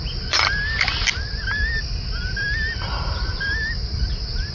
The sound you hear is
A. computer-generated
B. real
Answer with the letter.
B